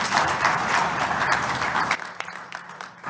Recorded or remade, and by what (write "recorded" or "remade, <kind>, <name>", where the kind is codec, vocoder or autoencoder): remade, vocoder, BigVGAN v2